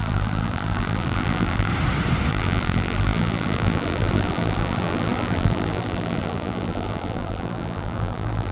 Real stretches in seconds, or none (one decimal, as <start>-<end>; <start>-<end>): 1.7-2.3